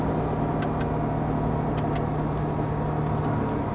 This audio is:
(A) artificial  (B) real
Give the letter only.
B